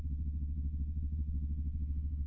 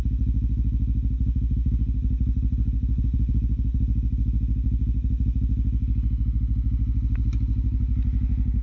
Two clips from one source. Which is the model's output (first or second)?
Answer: first